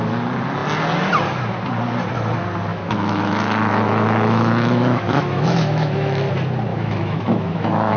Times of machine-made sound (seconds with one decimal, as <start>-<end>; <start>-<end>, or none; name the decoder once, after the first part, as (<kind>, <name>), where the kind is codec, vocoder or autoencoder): 2.7-6.3 (autoencoder, DAC-VAE); 6.7-8.0